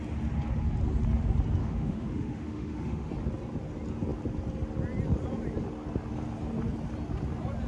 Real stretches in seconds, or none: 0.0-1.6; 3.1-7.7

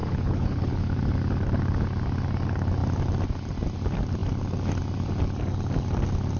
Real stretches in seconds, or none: 0.9-6.4

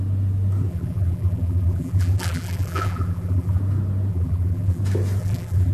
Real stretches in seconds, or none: 0.0-0.7; 3.6-4.1; 4.8-5.2

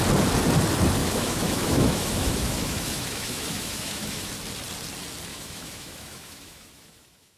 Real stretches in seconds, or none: 0.0-1.0; 4.3-5.3

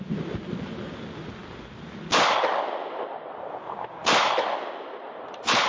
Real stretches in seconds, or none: 0.0-5.7